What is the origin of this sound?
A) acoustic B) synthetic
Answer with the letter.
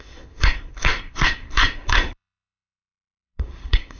B